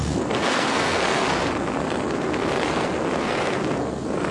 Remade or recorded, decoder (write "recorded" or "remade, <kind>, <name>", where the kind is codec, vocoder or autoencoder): remade, codec, SNAC